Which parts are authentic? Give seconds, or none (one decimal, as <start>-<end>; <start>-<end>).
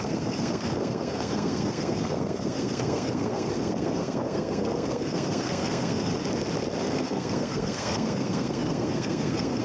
6.1-6.9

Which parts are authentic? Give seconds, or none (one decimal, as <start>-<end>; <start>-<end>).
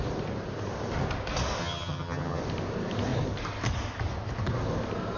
0.0-1.6; 2.4-5.2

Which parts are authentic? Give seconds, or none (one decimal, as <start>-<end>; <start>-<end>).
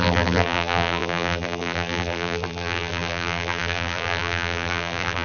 none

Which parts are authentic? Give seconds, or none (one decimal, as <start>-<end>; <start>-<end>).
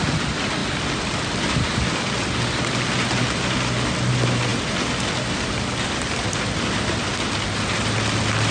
0.0-8.5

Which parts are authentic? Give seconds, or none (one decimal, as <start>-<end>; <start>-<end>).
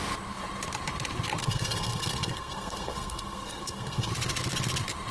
0.0-1.4; 4.1-5.1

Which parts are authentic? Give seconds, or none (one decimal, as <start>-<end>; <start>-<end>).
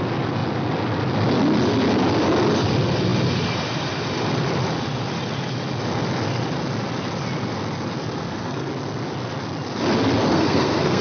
0.0-8.2; 8.7-10.3